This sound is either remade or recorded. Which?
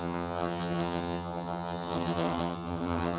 remade